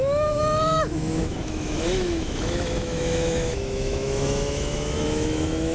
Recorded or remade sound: remade